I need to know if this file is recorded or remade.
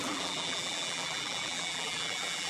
remade